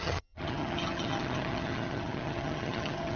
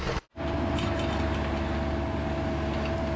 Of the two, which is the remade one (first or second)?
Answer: first